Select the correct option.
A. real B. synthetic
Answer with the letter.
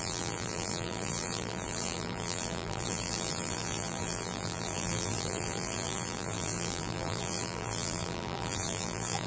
B